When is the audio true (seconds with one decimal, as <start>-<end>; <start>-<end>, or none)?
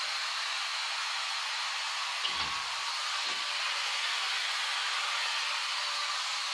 0.0-0.7; 1.6-3.8; 4.6-6.5